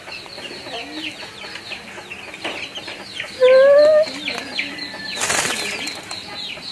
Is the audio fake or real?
real